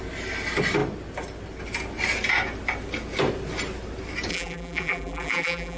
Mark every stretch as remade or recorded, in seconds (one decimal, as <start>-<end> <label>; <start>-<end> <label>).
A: 0.0-4.3 recorded; 4.3-5.8 remade